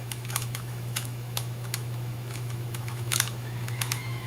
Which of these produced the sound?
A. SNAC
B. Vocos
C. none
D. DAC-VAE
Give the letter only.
D